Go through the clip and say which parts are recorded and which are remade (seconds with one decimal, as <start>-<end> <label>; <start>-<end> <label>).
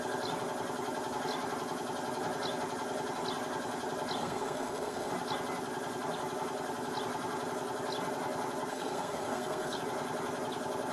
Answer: 0.0-4.2 recorded; 4.2-5.1 remade; 5.1-8.7 recorded; 8.7-9.8 remade; 9.8-10.9 recorded